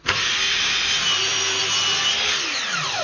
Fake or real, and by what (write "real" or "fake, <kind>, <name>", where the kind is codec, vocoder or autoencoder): real